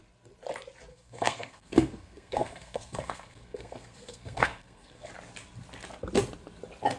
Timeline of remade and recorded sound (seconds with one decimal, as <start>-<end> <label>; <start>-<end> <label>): 0.0-0.9 recorded; 0.9-5.1 remade; 5.1-7.0 recorded